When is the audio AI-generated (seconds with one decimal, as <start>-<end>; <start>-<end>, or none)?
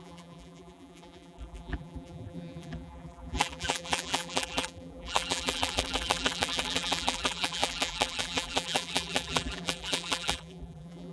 0.0-11.1